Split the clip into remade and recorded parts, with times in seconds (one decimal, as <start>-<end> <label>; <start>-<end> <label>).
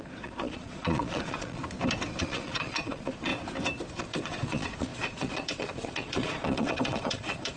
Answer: 0.0-1.6 remade; 1.6-2.2 recorded; 2.2-3.3 remade; 3.3-4.0 recorded; 4.0-7.6 remade